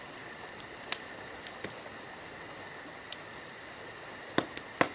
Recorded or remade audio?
recorded